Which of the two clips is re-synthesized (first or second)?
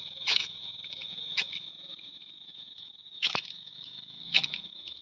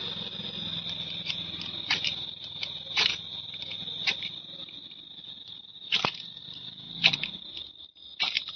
first